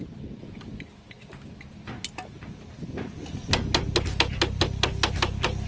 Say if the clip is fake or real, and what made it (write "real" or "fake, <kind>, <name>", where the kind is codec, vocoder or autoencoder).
real